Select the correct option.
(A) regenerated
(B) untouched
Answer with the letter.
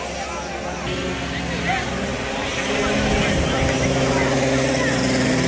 B